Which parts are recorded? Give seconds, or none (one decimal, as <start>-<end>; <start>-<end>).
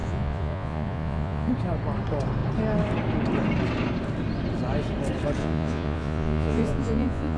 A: 1.5-5.4